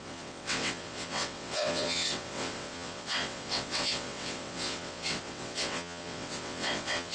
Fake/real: fake